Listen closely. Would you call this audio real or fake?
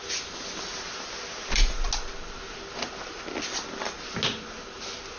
real